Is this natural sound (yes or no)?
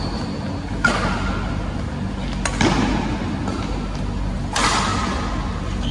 yes